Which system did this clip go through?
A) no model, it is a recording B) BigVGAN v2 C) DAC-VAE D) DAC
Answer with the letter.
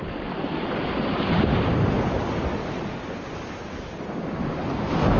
A